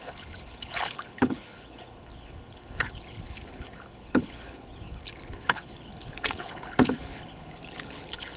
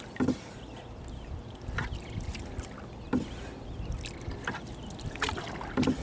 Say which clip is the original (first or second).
second